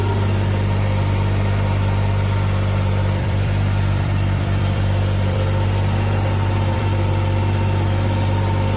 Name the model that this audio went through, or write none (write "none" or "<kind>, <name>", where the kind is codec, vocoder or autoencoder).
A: vocoder, BigVGAN v2